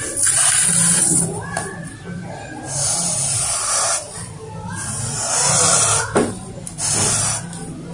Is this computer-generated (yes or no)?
no